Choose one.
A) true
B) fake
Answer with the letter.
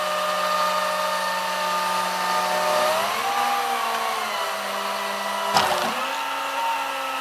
A